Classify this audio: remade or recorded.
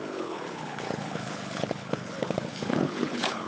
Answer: remade